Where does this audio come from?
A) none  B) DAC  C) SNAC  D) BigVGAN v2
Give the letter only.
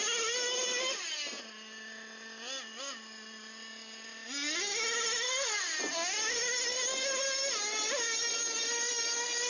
A